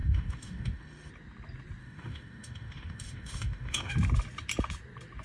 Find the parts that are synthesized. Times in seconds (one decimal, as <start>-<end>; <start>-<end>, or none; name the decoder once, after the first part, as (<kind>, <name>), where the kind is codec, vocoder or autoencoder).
0.0-1.1 (autoencoder, DAC-VAE); 1.8-3.9

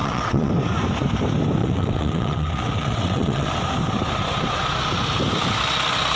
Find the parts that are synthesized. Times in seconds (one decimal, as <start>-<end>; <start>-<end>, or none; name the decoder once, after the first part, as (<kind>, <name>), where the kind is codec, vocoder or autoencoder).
0.0-0.5 (vocoder, WaveNeXt); 1.6-3.5

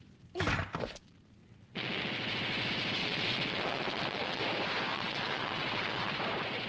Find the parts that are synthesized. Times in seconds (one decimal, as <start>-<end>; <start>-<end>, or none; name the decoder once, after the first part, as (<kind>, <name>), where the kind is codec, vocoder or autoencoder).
1.4-2.1 (vocoder, WaveNeXt); 3.0-4.4; 4.9-6.1

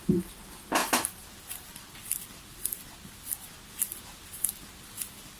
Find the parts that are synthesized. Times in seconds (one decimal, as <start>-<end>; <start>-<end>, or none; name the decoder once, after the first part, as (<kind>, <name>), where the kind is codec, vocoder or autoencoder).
none

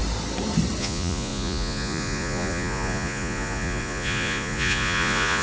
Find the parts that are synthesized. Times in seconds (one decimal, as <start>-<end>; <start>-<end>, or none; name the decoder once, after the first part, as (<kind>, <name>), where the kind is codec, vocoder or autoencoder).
0.8-5.4 (vocoder, Vocos)

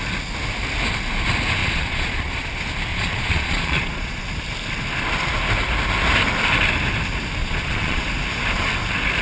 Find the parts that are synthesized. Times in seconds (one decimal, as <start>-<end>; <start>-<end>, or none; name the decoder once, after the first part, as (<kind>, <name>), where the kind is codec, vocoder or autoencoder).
1.6-2.3 (vocoder, Vocos); 2.9-4.2; 7.4-8.0

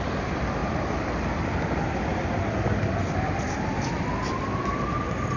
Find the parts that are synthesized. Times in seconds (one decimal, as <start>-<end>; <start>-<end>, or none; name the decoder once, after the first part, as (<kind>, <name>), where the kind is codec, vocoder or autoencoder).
none